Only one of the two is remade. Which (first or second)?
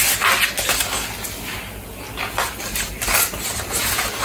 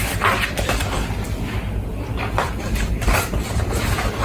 second